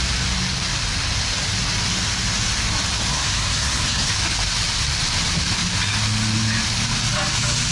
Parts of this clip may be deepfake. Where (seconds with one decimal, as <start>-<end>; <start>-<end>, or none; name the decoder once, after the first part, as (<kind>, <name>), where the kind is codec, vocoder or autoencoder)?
3.1-4.1 (codec, SNAC)